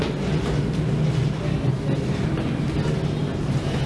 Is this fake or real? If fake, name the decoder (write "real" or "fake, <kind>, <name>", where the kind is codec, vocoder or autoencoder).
real